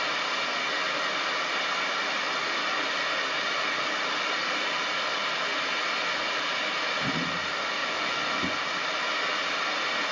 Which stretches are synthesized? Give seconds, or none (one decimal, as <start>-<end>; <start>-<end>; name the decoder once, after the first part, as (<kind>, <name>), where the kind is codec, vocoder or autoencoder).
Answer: 7.8-8.6 (vocoder, Vocos)